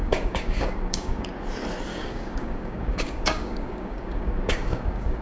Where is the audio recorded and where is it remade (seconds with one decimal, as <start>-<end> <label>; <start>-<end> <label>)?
0.0-1.3 remade; 1.3-1.9 recorded; 1.9-5.2 remade